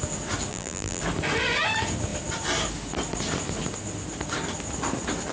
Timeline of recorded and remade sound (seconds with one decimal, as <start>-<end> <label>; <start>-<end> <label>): 0.0-0.5 recorded; 0.5-1.0 remade; 1.0-5.3 recorded